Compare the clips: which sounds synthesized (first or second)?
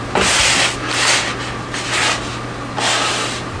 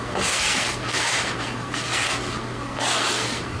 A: second